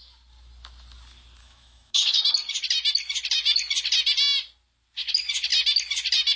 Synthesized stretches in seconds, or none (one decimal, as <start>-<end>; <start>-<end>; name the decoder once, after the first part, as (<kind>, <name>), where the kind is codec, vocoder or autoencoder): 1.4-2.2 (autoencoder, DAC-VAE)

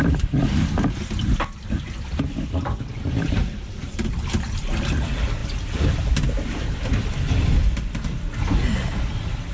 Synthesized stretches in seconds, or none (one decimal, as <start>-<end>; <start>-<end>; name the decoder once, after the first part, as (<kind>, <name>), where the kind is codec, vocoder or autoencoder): none

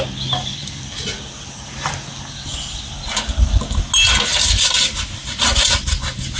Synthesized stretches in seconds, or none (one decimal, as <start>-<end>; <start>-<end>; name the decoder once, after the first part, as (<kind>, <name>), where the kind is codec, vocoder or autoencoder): 0.5-1.2 (vocoder, BigVGAN v2)

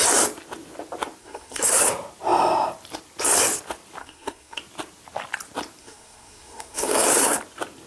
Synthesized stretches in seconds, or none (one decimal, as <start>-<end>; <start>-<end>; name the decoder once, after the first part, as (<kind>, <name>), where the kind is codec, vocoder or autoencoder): 1.2-1.8 (codec, SNAC); 4.0-4.6; 5.8-7.4

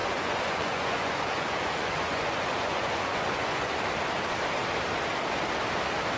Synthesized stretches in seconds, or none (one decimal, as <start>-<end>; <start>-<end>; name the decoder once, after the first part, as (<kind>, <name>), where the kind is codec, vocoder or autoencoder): 0.0-3.7 (vocoder, Vocos)

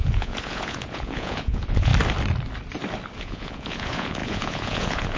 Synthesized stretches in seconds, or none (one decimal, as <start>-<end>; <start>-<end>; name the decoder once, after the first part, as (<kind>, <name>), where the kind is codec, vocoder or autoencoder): 0.0-1.9 (vocoder, Vocos); 3.2-5.2

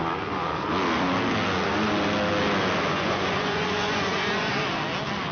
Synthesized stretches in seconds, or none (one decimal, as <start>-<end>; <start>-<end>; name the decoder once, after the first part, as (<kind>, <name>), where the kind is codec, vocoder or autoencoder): 2.9-4.5 (vocoder, Vocos)

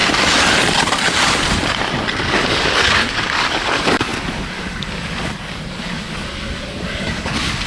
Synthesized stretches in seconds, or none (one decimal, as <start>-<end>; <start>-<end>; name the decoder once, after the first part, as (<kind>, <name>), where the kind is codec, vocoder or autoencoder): 2.3-7.7 (codec, DAC)